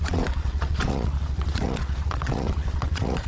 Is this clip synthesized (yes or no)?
yes